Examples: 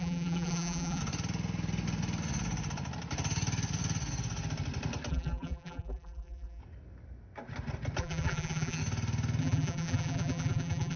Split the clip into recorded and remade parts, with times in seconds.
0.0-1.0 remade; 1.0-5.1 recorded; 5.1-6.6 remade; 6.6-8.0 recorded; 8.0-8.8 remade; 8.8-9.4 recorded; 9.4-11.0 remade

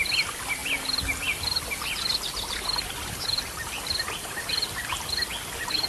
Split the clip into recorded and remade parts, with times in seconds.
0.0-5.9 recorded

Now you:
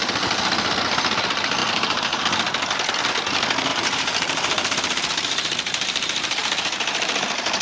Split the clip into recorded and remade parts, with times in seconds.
0.0-1.6 recorded; 1.6-2.2 remade; 2.2-3.7 recorded; 3.7-7.6 remade